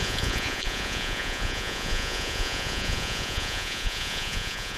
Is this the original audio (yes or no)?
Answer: no